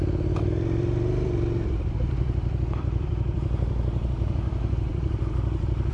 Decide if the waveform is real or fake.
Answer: fake